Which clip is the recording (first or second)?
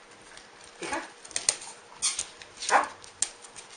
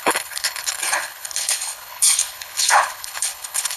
first